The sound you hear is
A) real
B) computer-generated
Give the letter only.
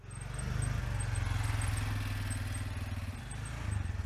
A